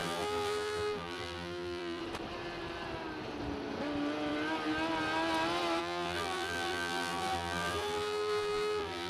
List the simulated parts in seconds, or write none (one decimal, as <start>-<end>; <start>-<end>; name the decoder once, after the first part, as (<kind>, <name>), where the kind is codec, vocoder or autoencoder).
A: 0.0-2.0 (vocoder, BigVGAN v2); 5.8-9.1